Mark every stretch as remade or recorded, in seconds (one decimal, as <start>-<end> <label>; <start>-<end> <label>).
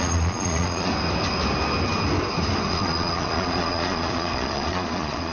0.0-0.9 remade; 0.9-2.7 recorded; 2.7-5.3 remade